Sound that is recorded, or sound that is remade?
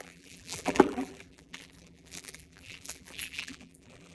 remade